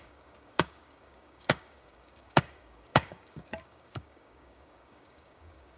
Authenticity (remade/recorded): remade